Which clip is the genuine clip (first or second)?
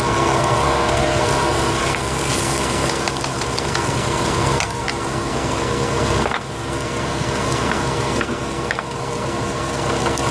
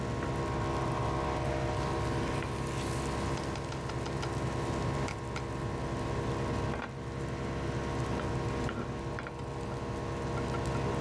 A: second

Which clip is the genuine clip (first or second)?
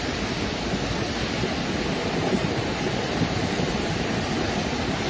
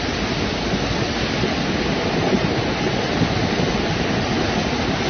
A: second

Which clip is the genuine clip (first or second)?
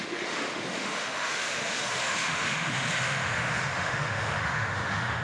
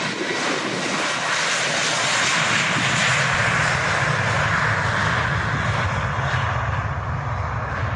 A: second